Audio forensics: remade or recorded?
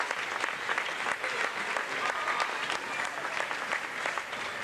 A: recorded